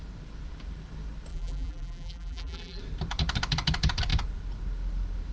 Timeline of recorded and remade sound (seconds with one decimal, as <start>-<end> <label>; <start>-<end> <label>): 0.0-1.3 recorded; 1.3-2.8 remade; 2.8-5.3 recorded